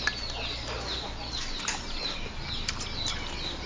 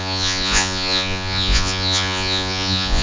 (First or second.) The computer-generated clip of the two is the second